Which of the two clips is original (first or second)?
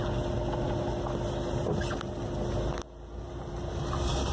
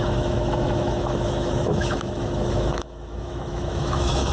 first